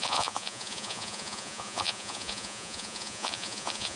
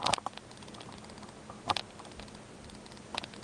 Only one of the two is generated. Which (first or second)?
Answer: first